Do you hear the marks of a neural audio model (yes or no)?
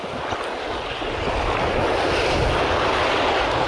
no